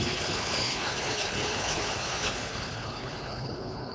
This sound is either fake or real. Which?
fake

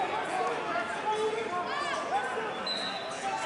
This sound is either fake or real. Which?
real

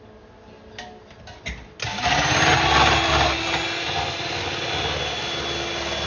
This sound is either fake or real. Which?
real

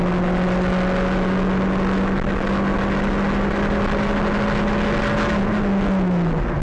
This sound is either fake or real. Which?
real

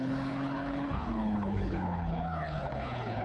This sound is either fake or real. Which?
fake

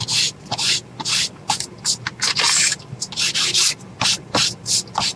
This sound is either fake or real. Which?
real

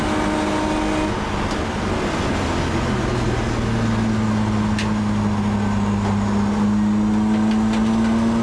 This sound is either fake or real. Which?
real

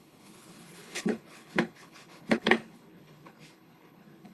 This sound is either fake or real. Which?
fake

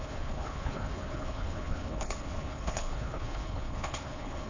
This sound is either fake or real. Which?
fake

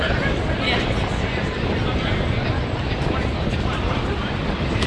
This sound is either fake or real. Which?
real